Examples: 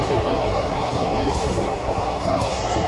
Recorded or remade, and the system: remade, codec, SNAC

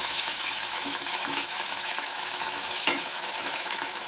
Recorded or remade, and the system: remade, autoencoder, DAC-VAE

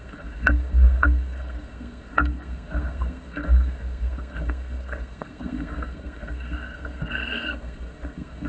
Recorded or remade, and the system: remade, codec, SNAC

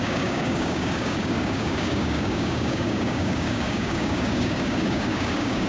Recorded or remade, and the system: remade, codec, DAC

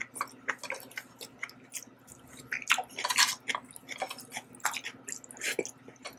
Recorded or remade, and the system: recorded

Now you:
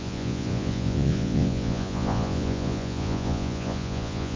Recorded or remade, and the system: remade, vocoder, Vocos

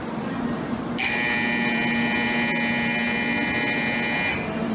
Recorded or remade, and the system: recorded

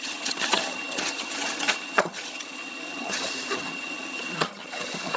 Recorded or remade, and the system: remade, vocoder, HiFi-GAN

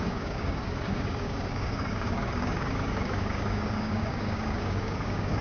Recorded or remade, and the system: remade, codec, DAC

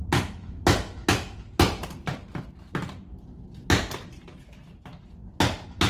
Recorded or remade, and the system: recorded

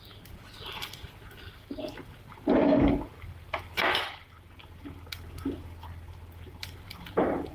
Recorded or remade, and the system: recorded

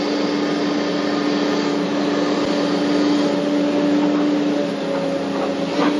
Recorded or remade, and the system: recorded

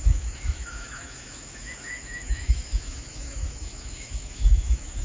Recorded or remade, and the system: remade, autoencoder, DAC-VAE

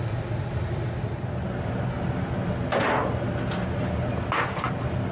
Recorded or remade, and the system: recorded